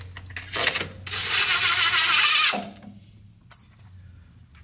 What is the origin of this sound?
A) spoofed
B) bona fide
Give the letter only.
B